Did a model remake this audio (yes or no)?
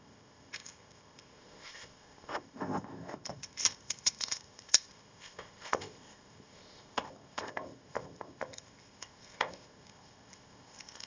yes